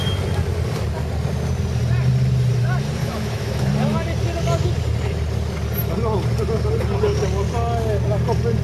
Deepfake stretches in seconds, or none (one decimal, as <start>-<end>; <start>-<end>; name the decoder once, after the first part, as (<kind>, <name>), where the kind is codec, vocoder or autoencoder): 3.0-3.7 (autoencoder, DAC-VAE)